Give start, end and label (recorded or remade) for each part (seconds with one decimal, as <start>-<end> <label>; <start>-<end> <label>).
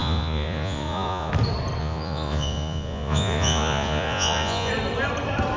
0.0-1.3 remade; 1.3-1.8 recorded; 1.8-4.7 remade; 4.7-5.6 recorded